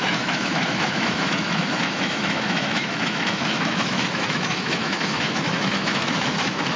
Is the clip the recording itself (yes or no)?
no